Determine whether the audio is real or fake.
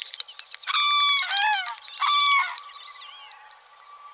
real